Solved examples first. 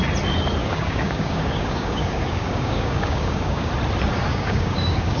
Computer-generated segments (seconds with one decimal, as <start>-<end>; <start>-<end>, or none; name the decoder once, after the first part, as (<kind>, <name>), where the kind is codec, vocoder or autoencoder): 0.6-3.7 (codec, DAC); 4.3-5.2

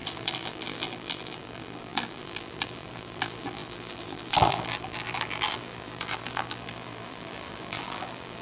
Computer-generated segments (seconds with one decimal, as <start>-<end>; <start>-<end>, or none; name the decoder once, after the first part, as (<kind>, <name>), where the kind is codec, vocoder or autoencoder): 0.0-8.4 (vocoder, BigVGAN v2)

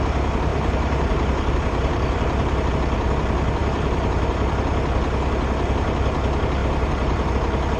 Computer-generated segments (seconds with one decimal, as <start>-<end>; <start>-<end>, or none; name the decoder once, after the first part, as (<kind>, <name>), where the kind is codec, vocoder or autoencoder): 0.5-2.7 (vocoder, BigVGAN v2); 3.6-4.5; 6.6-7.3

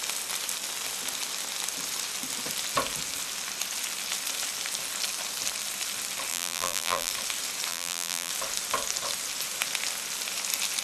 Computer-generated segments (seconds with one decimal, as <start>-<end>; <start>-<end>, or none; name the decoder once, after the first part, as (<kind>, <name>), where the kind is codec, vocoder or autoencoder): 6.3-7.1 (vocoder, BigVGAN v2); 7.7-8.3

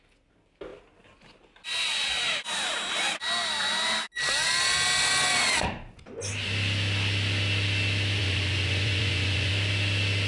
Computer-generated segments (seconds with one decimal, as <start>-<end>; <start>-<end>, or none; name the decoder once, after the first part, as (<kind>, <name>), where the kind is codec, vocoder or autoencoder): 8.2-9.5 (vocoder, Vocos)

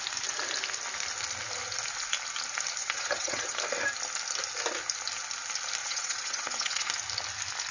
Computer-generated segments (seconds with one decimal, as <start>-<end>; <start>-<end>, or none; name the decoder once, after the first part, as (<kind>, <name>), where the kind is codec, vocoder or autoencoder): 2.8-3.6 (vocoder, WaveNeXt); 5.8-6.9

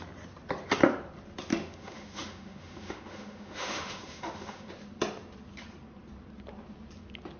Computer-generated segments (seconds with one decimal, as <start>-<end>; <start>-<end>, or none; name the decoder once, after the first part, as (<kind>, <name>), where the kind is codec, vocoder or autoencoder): 1.5-4.7 (autoencoder, DAC-VAE)

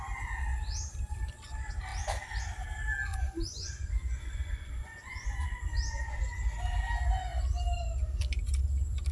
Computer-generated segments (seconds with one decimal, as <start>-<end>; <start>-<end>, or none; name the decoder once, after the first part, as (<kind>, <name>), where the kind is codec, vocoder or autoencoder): 3.1-6.2 (vocoder, Vocos)